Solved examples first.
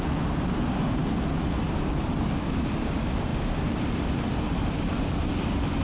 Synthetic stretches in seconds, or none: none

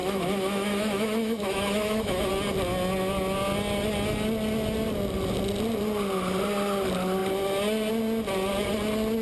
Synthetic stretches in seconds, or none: 0.0-2.3 (autoencoder, DAC-VAE)

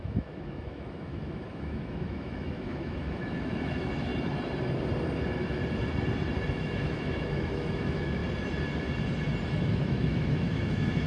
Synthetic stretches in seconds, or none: 0.0-4.1 (autoencoder, DAC-VAE); 6.5-8.2; 9.6-11.1

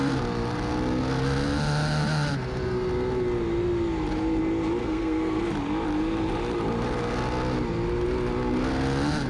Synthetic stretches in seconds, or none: 4.8-5.4 (codec, SNAC)